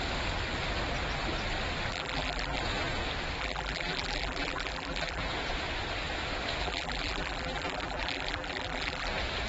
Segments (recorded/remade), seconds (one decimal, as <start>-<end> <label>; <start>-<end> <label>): 0.0-1.9 recorded; 1.9-2.6 remade; 2.6-3.4 recorded; 3.4-5.2 remade; 5.2-6.6 recorded; 6.6-9.1 remade; 9.1-9.5 recorded